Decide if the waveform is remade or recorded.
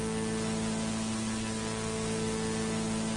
recorded